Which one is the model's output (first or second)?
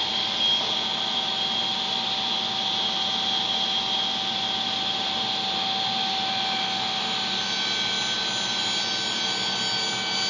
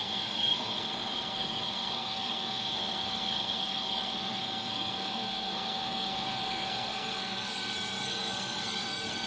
second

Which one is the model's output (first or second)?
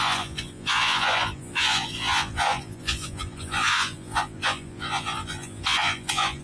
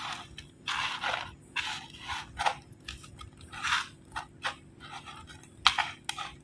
first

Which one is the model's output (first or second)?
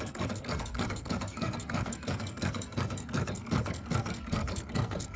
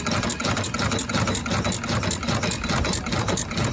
first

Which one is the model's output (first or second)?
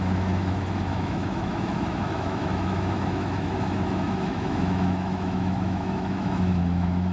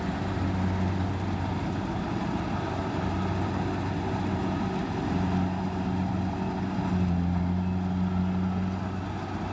first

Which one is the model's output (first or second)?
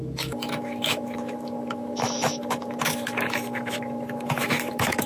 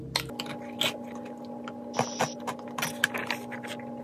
first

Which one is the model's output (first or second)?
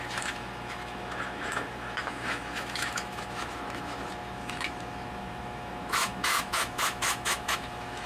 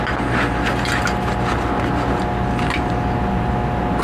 first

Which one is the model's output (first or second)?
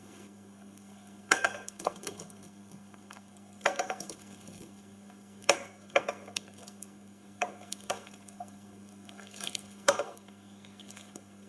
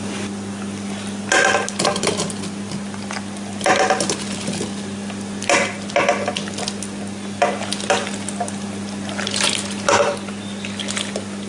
first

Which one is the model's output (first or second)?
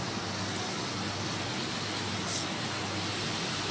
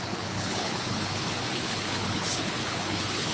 second